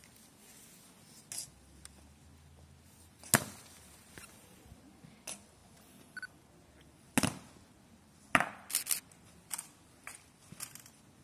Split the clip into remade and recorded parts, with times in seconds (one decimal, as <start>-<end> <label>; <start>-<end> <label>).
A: 0.0-11.2 recorded